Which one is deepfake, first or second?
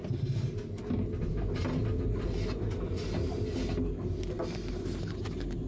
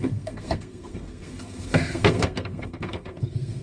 second